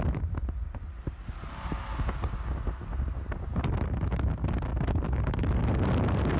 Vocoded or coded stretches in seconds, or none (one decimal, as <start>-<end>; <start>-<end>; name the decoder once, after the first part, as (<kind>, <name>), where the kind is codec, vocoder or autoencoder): none